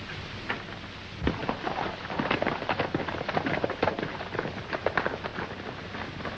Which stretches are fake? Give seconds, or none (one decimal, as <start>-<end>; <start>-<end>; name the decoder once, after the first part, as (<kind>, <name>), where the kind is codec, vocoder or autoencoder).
none